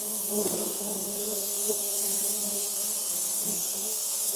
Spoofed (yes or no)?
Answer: yes